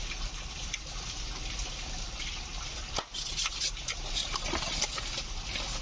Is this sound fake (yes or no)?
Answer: no